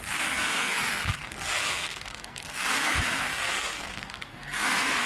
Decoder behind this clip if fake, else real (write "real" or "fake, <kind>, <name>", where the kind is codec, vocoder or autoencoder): fake, codec, SNAC